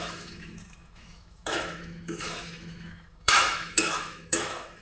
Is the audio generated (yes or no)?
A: yes